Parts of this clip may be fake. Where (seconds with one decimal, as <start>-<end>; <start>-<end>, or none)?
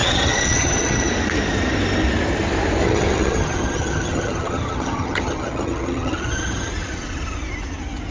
0.0-1.1; 2.8-6.7